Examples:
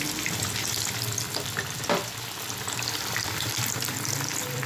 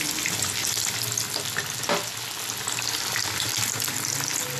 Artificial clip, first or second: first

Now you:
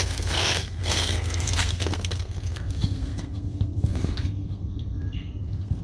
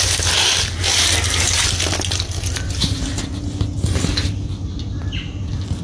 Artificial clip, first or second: first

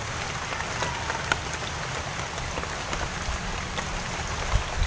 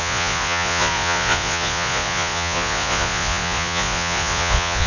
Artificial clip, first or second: second